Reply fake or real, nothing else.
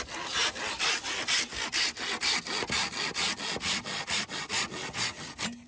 real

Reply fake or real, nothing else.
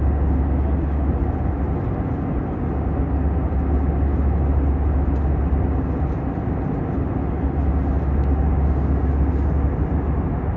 real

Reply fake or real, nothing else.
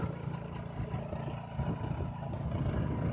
real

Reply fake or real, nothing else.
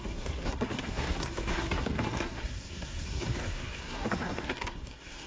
fake